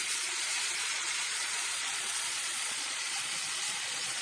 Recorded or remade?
remade